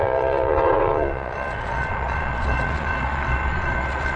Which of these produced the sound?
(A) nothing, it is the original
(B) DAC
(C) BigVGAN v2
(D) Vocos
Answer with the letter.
D